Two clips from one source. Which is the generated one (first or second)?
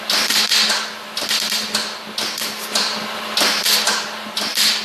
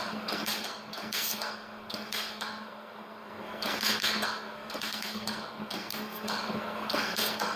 second